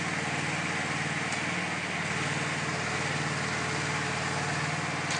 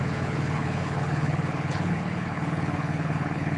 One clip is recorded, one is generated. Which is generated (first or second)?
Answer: second